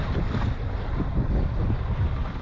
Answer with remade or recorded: recorded